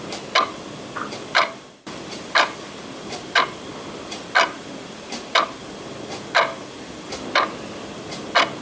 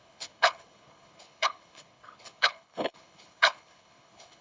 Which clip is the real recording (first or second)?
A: first